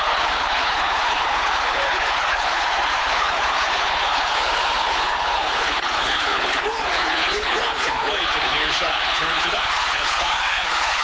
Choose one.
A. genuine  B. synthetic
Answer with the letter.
B